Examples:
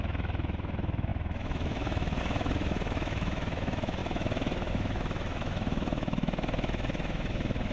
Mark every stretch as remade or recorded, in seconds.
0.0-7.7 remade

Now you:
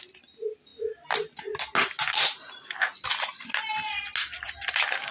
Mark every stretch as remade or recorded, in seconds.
0.0-5.1 recorded

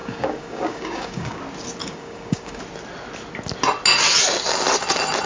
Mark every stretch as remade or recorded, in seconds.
0.0-1.4 remade; 1.4-1.8 recorded; 1.8-2.6 remade; 2.6-5.3 recorded

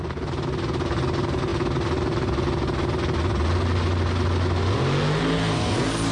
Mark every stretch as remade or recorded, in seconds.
0.0-6.1 recorded